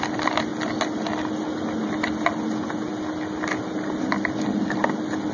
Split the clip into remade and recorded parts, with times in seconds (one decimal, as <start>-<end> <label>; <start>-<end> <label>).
0.0-5.3 recorded